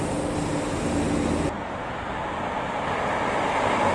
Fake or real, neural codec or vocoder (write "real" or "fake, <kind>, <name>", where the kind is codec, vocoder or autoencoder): real